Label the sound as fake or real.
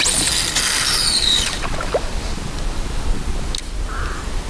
real